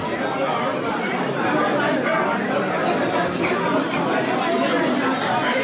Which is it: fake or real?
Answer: real